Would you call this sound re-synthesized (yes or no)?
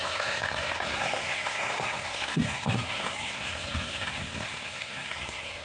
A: yes